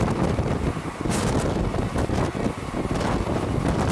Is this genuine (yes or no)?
yes